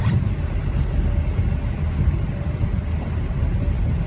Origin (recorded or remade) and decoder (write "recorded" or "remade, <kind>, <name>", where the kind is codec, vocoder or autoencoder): recorded